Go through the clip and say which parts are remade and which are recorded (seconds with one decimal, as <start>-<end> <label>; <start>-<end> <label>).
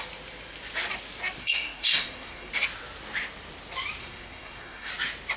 0.0-1.4 recorded; 1.4-2.5 remade; 2.5-4.0 recorded; 4.0-4.9 remade; 4.9-5.4 recorded